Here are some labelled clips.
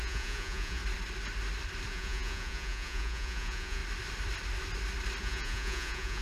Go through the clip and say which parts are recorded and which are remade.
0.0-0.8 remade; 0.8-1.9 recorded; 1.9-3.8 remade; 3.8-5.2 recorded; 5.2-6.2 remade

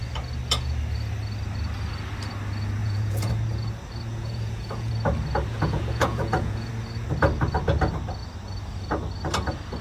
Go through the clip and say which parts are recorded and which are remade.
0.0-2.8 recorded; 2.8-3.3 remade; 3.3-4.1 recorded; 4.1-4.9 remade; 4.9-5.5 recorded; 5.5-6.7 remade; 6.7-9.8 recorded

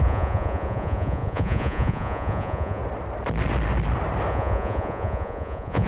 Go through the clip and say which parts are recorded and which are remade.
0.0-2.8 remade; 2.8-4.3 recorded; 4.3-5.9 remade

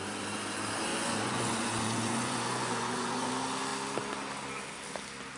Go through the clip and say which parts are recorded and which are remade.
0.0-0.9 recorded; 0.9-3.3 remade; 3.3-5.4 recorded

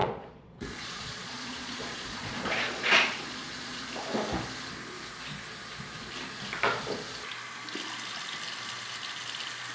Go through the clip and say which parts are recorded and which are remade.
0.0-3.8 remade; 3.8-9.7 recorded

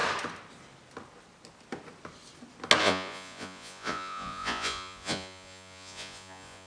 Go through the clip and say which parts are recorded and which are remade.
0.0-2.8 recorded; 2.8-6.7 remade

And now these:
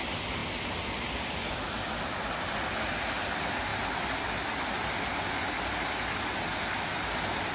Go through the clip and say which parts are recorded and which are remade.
0.0-7.5 recorded